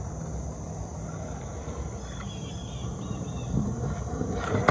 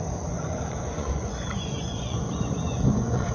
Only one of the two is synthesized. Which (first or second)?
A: second